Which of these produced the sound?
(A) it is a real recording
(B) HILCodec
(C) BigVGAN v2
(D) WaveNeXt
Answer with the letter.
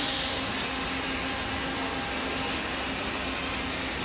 A